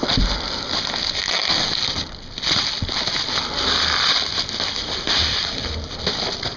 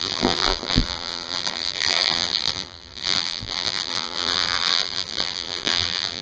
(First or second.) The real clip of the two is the first